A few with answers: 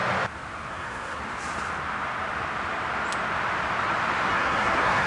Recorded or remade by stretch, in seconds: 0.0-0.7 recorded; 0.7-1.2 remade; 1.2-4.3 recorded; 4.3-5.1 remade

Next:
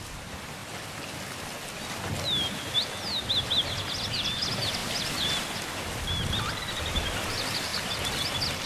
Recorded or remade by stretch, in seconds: 0.0-0.6 recorded; 0.6-1.2 remade; 1.2-8.7 recorded

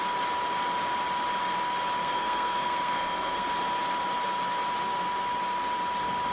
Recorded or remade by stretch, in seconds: 0.0-2.0 recorded; 2.0-3.5 remade; 3.5-6.3 recorded

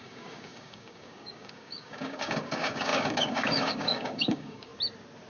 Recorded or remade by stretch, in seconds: 0.0-4.7 remade; 4.7-5.3 recorded

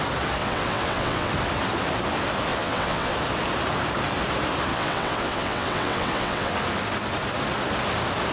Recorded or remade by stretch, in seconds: 0.0-0.4 recorded; 0.4-1.3 remade; 1.3-2.5 recorded; 2.5-3.1 remade; 3.1-4.7 recorded; 4.7-6.5 remade; 6.5-8.3 recorded